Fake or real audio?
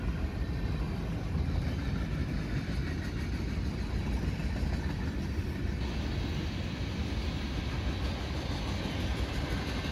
real